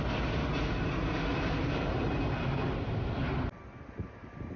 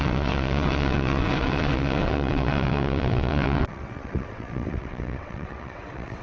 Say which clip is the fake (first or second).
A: second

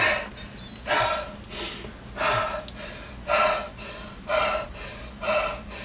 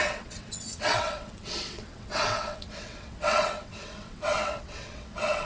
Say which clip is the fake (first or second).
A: second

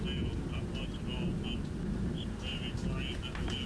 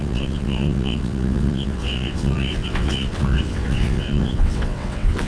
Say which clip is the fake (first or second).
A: second